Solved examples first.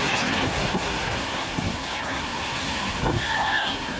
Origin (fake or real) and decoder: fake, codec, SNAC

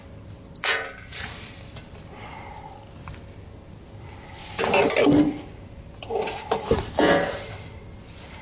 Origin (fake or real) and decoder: real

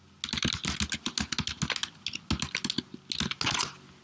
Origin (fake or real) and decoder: real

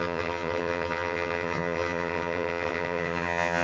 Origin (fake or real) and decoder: fake, vocoder, HiFi-GAN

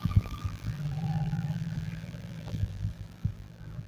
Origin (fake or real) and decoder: fake, vocoder, BigVGAN v2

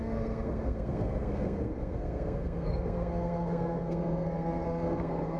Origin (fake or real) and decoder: fake, codec, SNAC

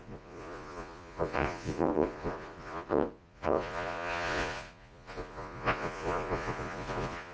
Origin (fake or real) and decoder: fake, vocoder, Vocos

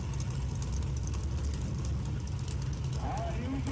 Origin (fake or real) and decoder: real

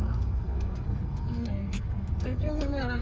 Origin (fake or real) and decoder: fake, codec, SNAC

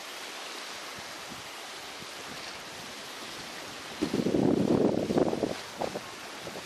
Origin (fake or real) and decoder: real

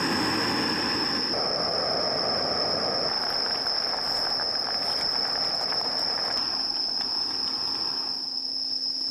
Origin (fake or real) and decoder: real